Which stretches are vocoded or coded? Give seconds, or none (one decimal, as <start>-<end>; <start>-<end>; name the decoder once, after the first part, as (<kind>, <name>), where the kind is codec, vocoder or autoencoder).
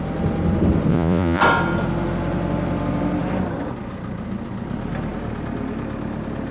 0.9-1.4 (vocoder, Vocos)